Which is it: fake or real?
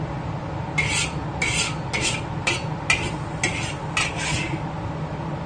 real